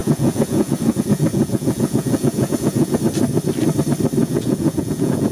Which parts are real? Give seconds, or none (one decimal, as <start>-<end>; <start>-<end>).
3.0-4.2